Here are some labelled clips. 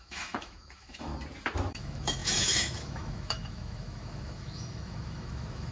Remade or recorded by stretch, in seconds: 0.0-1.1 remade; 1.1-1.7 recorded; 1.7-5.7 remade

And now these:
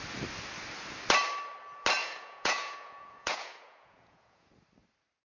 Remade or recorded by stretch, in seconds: 0.0-2.0 recorded; 2.0-4.5 remade; 4.5-5.3 recorded

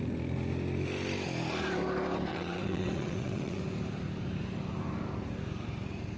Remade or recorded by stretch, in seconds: 0.0-2.3 recorded; 2.3-3.6 remade; 3.6-6.2 recorded